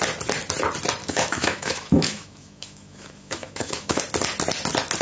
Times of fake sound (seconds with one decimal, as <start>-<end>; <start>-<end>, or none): 1.0-4.0